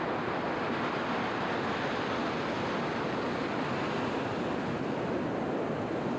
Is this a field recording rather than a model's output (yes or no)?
yes